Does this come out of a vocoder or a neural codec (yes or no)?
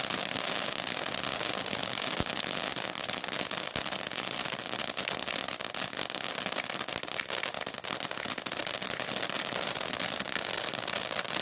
no